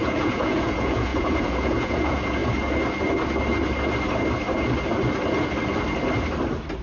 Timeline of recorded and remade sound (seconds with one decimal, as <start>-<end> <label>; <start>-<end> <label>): 0.0-2.4 remade; 2.4-6.8 recorded